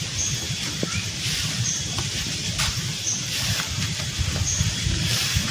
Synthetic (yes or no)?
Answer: yes